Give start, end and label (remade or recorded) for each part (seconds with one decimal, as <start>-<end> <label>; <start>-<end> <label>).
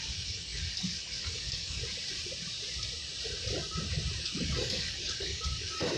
0.0-1.8 remade; 1.8-4.2 recorded; 4.2-6.0 remade